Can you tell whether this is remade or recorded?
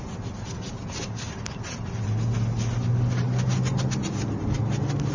recorded